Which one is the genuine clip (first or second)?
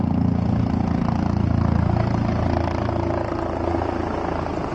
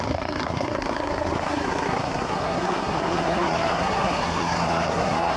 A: first